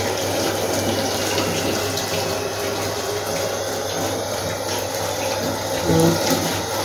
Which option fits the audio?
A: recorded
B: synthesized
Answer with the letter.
A